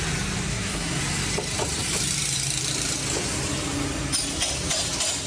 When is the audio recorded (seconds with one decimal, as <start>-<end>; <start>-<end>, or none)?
0.0-0.5; 1.0-5.3